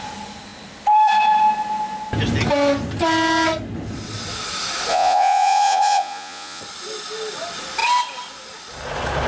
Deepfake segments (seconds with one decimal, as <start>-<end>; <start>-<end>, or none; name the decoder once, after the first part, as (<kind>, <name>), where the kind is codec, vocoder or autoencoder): 4.9-6.6 (vocoder, Vocos)